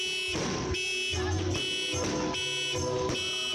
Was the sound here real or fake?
real